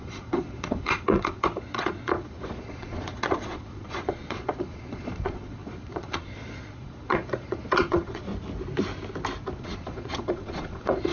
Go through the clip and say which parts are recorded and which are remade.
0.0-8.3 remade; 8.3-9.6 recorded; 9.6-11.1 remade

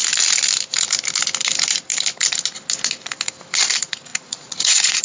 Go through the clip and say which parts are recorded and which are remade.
0.0-4.1 recorded; 4.1-5.0 remade

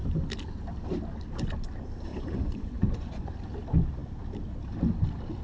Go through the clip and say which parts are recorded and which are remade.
0.0-2.1 recorded; 2.1-3.3 remade; 3.3-5.4 recorded